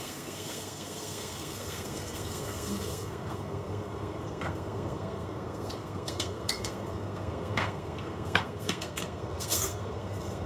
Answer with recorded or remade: remade